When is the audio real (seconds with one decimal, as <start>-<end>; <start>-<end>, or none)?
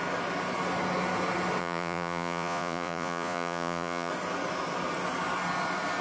0.0-1.6; 4.1-6.0